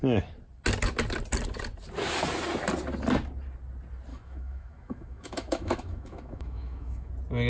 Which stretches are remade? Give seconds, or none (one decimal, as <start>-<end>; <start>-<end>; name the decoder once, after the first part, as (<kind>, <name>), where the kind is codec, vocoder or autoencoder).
4.1-7.1 (autoencoder, DAC-VAE)